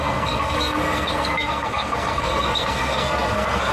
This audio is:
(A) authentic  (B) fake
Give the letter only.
B